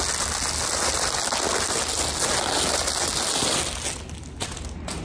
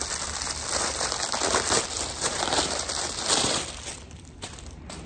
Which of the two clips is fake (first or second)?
second